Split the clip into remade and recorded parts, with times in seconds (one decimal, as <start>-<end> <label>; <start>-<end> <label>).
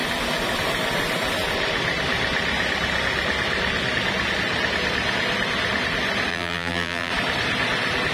0.0-6.3 recorded; 6.3-7.1 remade; 7.1-8.1 recorded